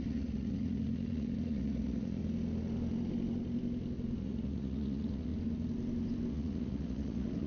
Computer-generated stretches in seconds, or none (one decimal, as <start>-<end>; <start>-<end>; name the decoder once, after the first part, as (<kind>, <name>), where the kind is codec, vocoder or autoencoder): 0.0-2.2 (vocoder, Vocos); 4.2-5.3; 6.3-7.5